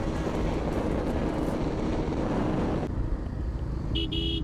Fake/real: real